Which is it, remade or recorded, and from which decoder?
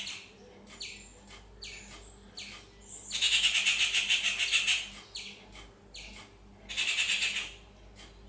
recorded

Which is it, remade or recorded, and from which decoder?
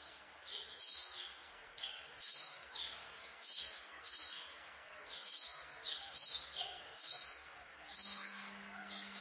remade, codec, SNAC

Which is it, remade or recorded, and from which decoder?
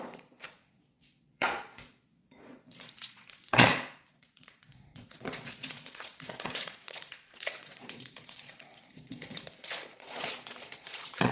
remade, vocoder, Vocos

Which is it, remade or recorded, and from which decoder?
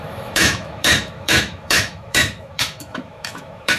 remade, autoencoder, DAC-VAE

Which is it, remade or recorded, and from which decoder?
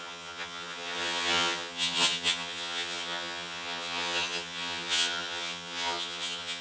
remade, vocoder, HiFi-GAN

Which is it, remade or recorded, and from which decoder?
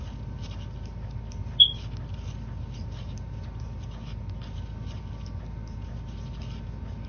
recorded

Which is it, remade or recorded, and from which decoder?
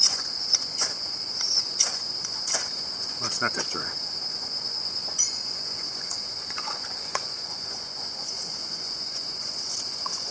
remade, vocoder, Vocos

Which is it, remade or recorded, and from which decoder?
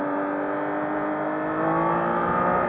recorded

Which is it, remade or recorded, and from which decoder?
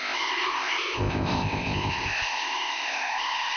remade, codec, ZipCodec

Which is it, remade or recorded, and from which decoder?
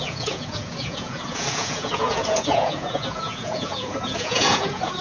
remade, vocoder, Vocos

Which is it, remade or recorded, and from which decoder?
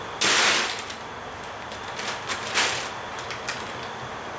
recorded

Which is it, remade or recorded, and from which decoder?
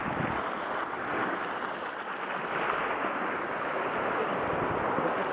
recorded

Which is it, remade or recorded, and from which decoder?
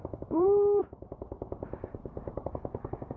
remade, vocoder, BigVGAN v2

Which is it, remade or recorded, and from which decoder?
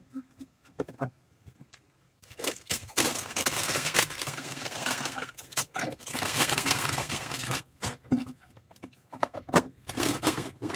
remade, codec, SNAC